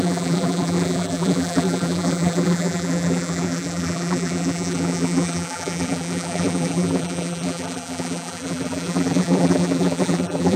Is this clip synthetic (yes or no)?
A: yes